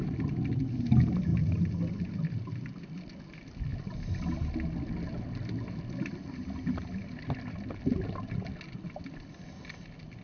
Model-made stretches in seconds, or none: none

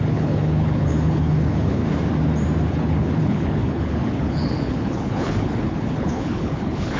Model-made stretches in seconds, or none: 0.0-1.8 (codec, HILCodec); 2.7-7.0

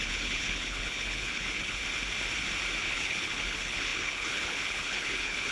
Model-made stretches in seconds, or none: 0.0-1.8 (codec, HILCodec); 2.8-5.5

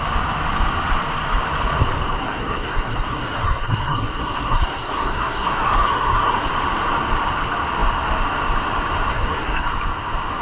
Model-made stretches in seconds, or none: 2.2-6.5 (codec, SNAC); 9.1-9.7

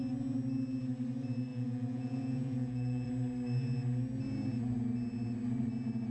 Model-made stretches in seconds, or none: 1.5-3.1 (vocoder, Vocos)

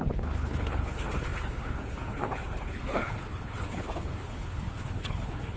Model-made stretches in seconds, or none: 0.0-5.6 (codec, HILCodec)

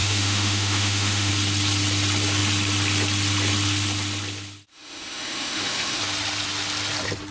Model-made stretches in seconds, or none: 0.0-1.3 (autoencoder, DAC-VAE); 4.7-6.0

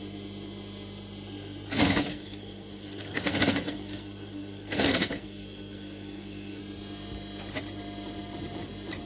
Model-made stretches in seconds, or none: 1.8-6.6 (codec, SNAC)